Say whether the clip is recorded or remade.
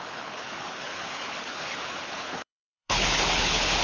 remade